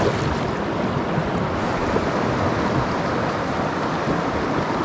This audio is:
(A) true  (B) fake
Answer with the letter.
A